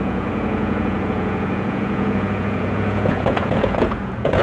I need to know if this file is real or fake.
fake